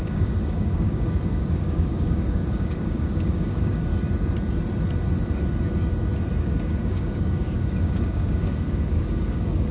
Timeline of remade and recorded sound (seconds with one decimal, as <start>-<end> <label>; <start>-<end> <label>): 0.0-3.9 remade; 3.9-6.4 recorded; 6.4-9.7 remade